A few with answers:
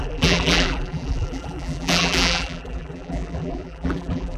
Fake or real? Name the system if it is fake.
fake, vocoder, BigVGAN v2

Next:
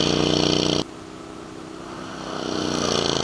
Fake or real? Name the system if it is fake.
real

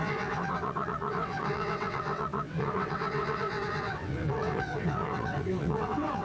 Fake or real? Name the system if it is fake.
fake, vocoder, WaveNeXt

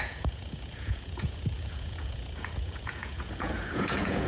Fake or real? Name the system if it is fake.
fake, vocoder, Vocos